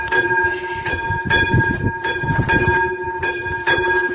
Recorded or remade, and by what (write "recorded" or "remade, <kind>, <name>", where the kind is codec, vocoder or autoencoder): remade, vocoder, BigVGAN v2